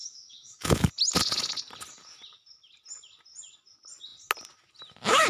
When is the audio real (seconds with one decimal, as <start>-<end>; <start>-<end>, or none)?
0.9-5.3